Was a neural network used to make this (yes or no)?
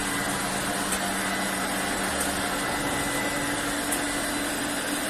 no